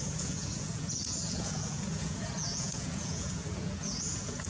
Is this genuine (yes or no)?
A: no